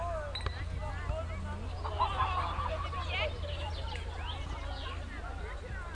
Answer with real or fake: real